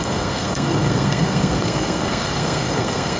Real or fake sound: fake